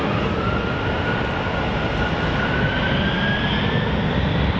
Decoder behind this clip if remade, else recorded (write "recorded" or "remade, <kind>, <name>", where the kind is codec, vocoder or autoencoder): recorded